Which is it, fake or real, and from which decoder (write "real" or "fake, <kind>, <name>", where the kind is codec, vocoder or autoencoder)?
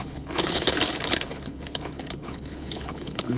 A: fake, codec, HILCodec